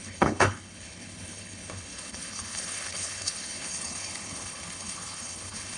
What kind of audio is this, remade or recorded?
remade